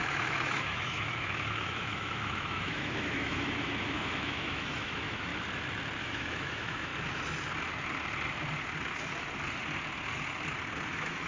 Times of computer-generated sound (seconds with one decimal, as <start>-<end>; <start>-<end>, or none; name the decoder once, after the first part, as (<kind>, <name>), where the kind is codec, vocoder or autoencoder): 0.0-5.3 (autoencoder, DAC-VAE); 6.0-6.9; 10.9-11.3